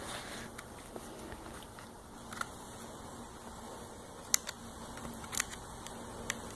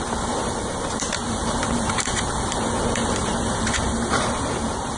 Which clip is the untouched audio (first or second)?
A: first